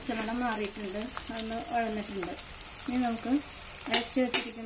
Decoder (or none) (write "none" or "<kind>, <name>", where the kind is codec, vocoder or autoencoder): none